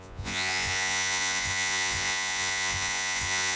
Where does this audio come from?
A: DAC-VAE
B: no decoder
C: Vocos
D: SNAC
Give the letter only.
C